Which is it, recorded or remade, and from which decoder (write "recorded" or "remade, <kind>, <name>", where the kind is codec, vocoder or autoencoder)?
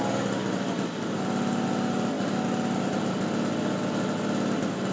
recorded